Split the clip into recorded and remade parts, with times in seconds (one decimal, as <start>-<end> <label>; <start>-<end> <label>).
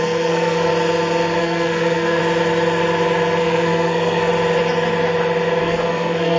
0.0-0.7 remade; 0.7-1.4 recorded; 1.4-2.2 remade; 2.2-3.4 recorded; 3.4-4.3 remade; 4.3-5.6 recorded; 5.6-6.4 remade